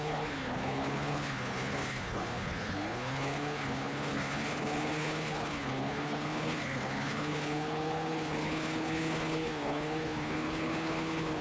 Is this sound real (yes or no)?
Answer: no